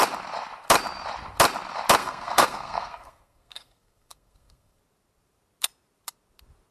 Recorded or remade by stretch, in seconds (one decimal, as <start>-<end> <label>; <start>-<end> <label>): 0.0-2.0 recorded; 2.0-4.8 remade; 4.8-6.7 recorded